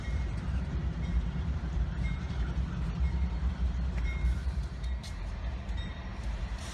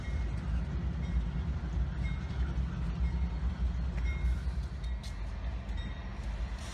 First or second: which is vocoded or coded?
first